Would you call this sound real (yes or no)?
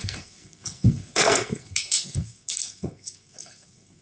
no